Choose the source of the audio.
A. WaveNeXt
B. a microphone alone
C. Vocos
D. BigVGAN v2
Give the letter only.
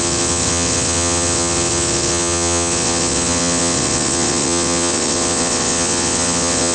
A